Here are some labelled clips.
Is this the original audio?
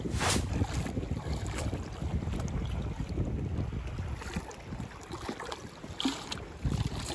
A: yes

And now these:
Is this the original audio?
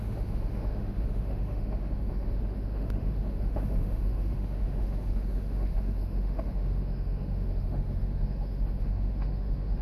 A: no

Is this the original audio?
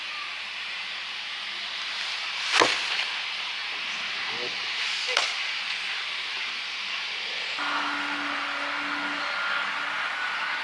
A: yes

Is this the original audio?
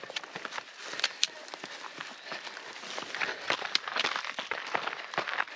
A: yes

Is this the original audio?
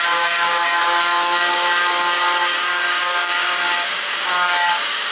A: no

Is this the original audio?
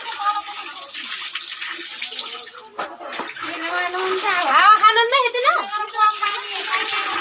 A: yes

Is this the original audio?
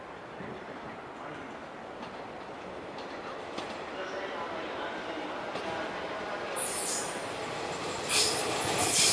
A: no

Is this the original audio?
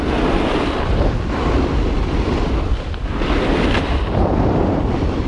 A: no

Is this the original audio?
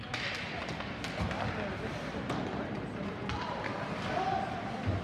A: yes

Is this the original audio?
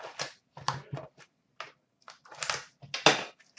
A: yes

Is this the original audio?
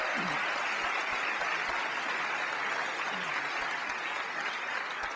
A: yes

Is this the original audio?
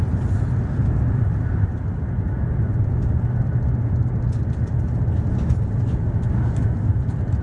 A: yes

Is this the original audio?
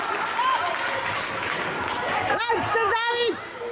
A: yes